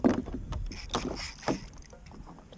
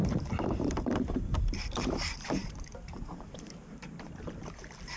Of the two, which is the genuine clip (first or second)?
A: first